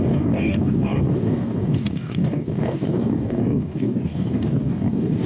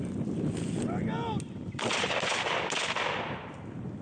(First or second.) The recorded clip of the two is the second